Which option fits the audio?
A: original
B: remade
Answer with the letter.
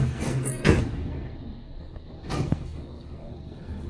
B